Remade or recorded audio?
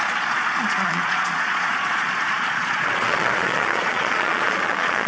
remade